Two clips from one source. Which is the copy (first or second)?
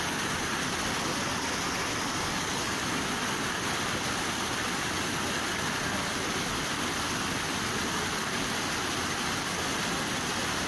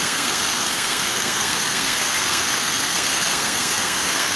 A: second